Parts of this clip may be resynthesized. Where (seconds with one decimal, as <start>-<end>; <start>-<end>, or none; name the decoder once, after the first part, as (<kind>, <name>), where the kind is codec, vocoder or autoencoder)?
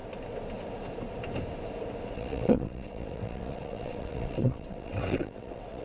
2.1-5.8 (vocoder, WaveNeXt)